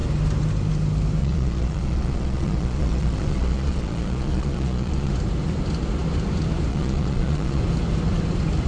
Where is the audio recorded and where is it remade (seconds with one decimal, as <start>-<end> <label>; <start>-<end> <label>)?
0.0-1.2 recorded; 1.2-5.1 remade; 5.1-6.7 recorded; 6.7-7.6 remade; 7.6-8.7 recorded